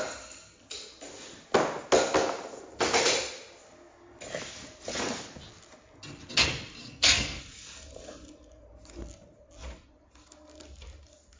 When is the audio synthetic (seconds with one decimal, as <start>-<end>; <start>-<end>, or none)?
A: 6.8-7.4